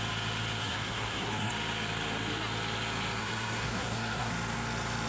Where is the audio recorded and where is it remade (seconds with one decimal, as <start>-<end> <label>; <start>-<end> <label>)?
0.0-0.6 recorded; 0.6-1.5 remade; 1.5-3.2 recorded; 3.2-4.3 remade; 4.3-5.1 recorded